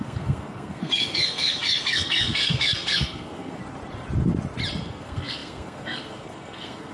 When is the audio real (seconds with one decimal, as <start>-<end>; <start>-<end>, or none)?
3.6-4.8